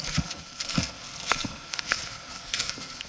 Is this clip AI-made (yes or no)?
yes